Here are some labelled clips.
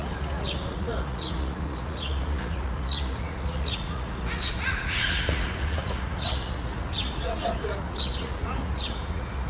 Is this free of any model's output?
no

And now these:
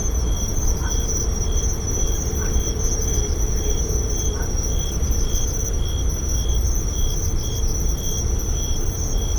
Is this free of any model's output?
yes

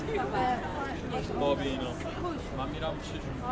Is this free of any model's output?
yes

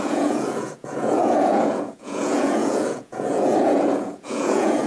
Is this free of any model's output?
no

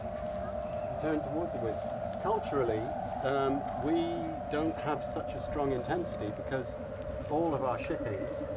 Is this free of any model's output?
yes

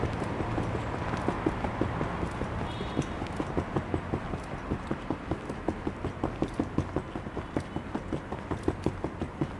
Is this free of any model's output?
yes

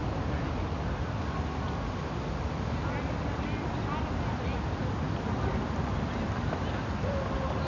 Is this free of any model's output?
yes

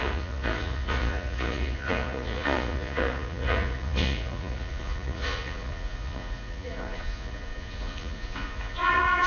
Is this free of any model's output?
no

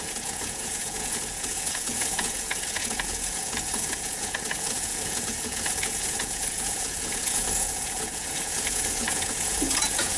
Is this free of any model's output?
no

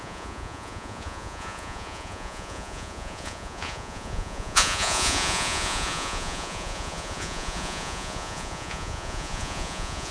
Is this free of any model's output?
no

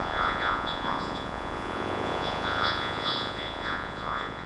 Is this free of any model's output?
no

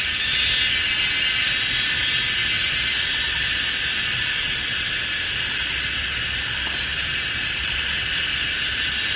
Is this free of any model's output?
yes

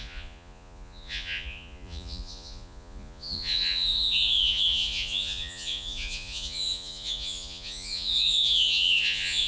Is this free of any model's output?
no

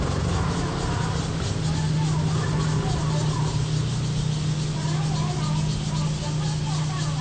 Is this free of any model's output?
yes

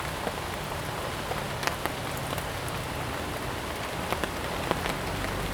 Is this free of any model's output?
yes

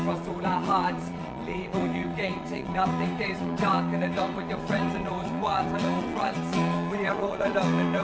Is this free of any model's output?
no